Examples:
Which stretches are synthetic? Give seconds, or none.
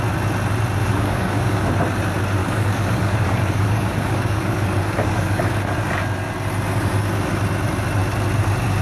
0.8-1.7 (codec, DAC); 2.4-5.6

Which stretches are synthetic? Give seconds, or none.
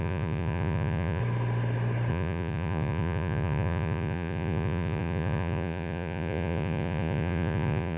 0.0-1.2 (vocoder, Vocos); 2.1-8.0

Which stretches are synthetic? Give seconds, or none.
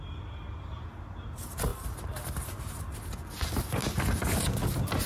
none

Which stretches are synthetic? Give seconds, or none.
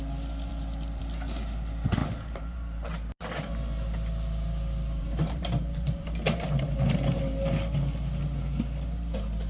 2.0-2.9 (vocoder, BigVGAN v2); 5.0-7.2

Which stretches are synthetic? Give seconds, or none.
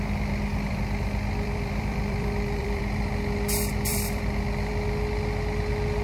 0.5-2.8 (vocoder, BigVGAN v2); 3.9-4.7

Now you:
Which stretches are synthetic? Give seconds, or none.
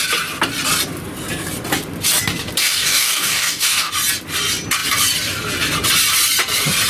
2.6-3.9 (codec, DAC)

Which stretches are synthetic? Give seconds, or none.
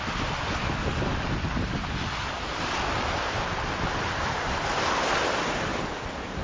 none